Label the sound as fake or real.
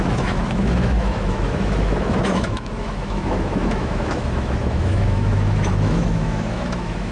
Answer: fake